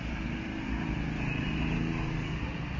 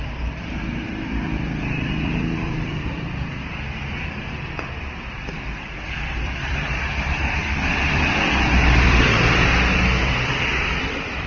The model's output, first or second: second